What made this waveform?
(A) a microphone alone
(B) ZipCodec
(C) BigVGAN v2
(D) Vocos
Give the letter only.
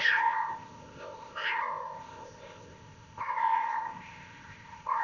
B